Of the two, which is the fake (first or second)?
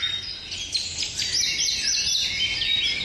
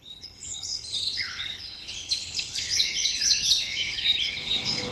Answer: second